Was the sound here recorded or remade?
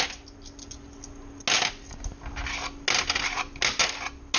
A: recorded